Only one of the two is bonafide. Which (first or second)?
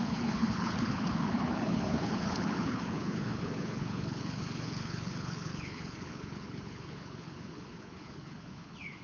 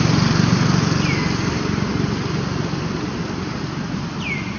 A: second